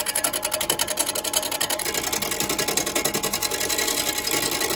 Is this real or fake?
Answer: real